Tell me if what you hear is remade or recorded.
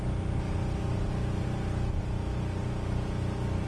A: recorded